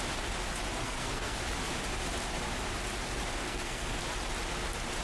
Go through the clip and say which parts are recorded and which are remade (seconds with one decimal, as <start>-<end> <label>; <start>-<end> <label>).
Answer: 0.0-0.8 recorded; 0.8-1.4 remade; 1.4-3.4 recorded; 3.4-4.0 remade; 4.0-5.0 recorded